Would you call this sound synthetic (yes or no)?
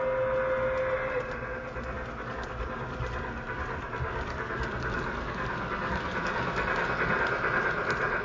no